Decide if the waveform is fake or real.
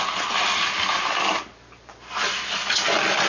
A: real